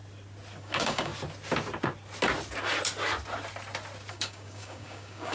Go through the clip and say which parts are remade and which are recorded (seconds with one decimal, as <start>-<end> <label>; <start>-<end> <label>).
0.0-0.6 recorded; 0.6-1.1 remade; 1.1-4.1 recorded; 4.1-5.3 remade